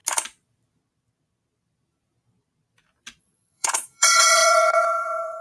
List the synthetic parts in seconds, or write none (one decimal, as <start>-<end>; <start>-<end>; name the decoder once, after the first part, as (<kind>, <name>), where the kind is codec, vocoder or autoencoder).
3.2-5.4 (vocoder, Vocos)

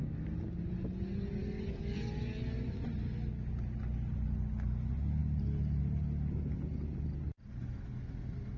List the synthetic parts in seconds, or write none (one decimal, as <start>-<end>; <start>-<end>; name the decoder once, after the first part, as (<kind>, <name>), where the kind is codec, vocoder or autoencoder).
none

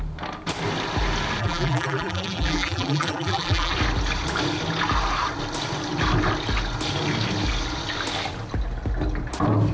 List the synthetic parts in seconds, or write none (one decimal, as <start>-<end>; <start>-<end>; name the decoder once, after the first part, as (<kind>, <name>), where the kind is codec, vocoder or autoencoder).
1.4-3.7 (vocoder, BigVGAN v2)

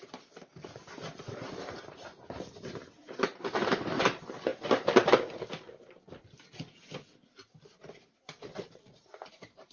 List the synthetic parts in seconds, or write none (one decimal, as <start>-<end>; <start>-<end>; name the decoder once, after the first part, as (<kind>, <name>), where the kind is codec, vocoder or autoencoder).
0.0-4.5 (vocoder, BigVGAN v2); 8.7-9.7

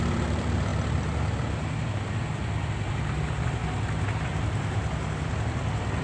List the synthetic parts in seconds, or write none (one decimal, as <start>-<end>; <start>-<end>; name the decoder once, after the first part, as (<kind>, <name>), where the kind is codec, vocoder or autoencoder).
0.0-0.7 (vocoder, BigVGAN v2); 2.9-3.6; 4.2-4.8

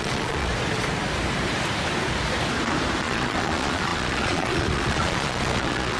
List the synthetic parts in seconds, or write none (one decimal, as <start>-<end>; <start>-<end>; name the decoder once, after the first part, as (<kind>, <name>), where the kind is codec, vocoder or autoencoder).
0.0-0.5 (vocoder, Vocos); 3.0-6.0

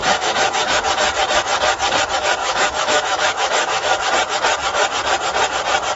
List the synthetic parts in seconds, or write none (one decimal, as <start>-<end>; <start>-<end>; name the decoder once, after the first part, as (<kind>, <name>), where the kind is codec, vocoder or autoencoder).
0.0-0.8 (autoencoder, DAC-VAE); 2.4-4.1